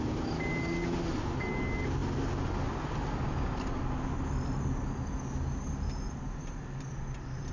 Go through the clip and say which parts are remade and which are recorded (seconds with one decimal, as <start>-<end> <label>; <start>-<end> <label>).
0.0-7.5 recorded